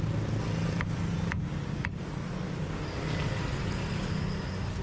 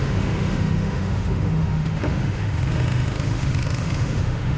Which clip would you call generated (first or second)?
second